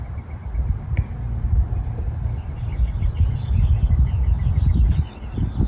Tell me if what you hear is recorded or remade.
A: recorded